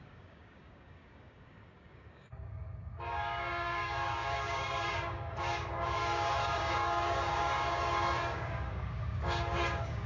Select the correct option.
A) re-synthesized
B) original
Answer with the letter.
A